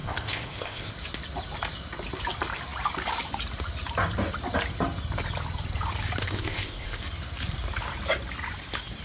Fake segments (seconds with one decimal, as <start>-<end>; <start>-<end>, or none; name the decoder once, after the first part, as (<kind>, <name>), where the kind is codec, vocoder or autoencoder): 0.0-0.9 (codec, ZipCodec); 6.2-7.0